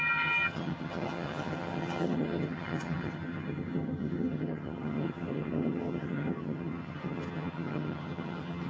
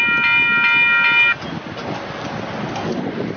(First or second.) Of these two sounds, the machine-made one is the first